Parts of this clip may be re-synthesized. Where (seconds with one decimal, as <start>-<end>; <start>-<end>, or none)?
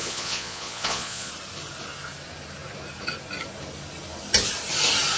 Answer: 0.0-1.3